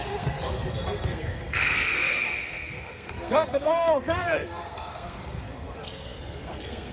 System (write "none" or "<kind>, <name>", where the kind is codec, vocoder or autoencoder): codec, SNAC